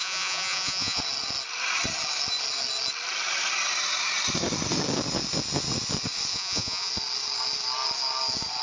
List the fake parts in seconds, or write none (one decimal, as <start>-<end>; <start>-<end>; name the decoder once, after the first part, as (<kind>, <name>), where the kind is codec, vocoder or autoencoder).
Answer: 0.0-1.0 (vocoder, Vocos); 6.3-6.9